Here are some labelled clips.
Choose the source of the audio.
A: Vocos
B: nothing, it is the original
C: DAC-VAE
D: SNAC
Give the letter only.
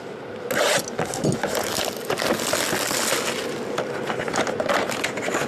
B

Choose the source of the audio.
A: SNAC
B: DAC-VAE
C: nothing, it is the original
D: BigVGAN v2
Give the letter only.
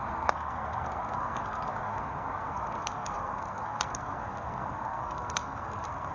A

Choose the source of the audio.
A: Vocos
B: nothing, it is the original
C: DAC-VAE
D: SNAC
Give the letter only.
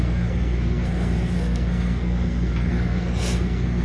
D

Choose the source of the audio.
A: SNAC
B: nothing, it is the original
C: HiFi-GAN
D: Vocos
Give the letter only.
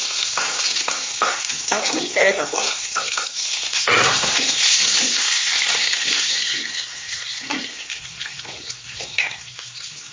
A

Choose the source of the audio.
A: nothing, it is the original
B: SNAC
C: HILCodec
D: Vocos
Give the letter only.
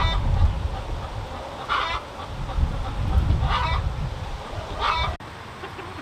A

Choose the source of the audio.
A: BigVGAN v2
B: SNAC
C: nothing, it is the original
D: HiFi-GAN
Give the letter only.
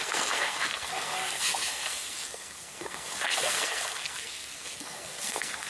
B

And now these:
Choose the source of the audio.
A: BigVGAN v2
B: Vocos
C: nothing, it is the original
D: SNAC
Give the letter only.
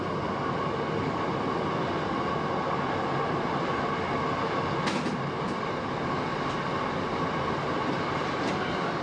C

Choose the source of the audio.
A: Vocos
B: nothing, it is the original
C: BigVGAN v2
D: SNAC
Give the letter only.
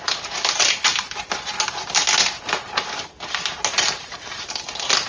B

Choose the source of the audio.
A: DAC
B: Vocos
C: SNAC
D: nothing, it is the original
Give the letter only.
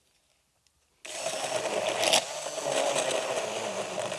D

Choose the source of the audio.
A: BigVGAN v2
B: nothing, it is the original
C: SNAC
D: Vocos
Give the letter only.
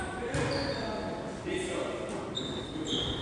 B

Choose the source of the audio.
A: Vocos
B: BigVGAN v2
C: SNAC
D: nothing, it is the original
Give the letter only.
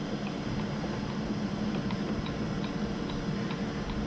D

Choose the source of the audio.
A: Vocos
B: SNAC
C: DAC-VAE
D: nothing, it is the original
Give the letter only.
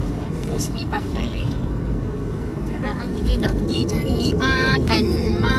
B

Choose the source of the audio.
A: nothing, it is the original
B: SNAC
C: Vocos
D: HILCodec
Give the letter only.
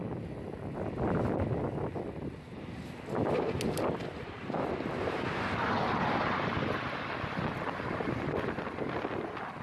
A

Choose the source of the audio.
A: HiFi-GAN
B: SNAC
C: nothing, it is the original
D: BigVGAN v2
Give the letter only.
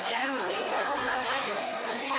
B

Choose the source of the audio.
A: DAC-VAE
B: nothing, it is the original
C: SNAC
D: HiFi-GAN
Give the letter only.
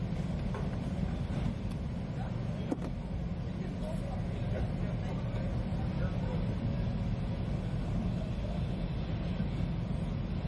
B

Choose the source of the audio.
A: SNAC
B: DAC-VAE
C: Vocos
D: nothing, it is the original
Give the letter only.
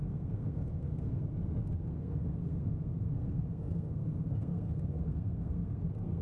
A